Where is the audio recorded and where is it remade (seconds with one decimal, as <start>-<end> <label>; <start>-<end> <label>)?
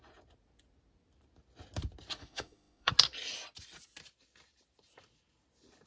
0.0-2.2 recorded; 2.2-2.9 remade; 2.9-5.9 recorded